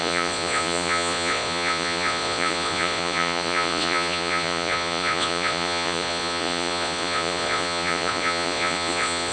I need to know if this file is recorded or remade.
remade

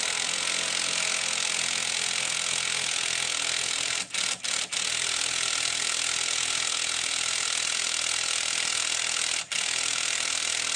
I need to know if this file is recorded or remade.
recorded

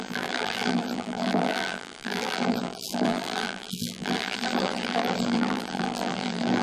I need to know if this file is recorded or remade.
remade